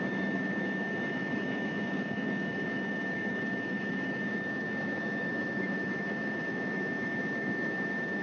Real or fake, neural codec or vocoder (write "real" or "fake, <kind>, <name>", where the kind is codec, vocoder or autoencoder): fake, autoencoder, DAC-VAE